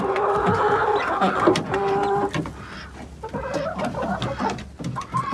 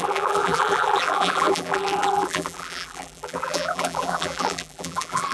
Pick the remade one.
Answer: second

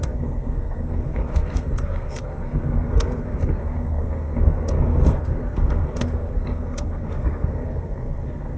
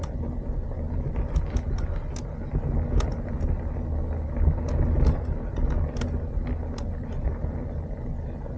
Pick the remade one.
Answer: first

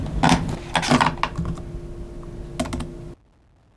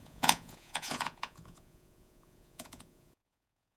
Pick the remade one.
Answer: second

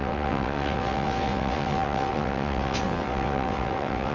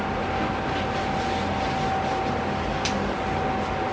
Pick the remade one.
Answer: first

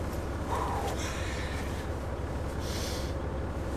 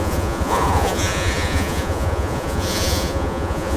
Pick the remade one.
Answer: second